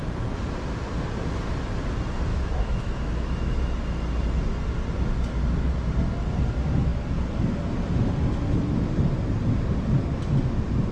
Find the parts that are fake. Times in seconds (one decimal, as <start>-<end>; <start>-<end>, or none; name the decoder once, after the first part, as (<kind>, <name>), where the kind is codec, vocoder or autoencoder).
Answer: 2.3-3.8 (autoencoder, DAC-VAE)